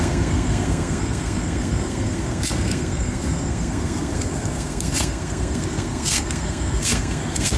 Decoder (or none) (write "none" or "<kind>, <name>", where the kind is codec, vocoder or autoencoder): codec, SNAC